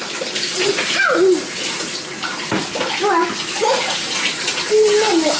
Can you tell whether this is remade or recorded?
recorded